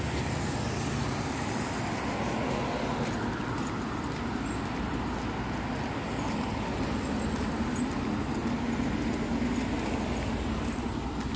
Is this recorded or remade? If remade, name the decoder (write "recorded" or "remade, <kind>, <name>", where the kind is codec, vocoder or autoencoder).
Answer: recorded